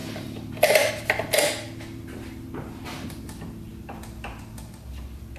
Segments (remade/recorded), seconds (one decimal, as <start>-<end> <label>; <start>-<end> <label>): 0.0-0.9 remade; 0.9-5.4 recorded